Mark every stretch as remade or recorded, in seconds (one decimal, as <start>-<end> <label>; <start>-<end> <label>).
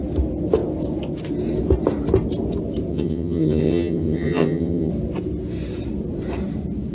0.0-2.9 recorded; 2.9-4.9 remade; 4.9-6.9 recorded